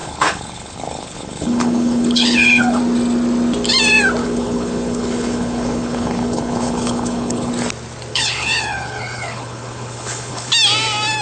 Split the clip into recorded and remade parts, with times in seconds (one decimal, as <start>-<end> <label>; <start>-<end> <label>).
0.0-2.8 remade; 2.8-4.2 recorded; 4.2-7.5 remade; 7.5-8.1 recorded; 8.1-10.5 remade; 10.5-11.2 recorded